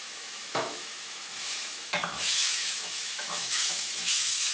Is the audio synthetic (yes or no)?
yes